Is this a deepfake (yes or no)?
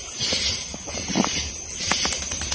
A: no